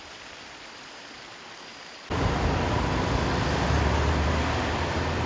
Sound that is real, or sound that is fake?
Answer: real